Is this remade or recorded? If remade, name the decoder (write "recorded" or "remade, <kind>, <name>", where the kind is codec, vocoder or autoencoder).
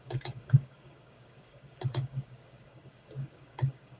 remade, codec, DAC